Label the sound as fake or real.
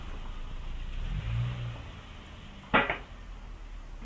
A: real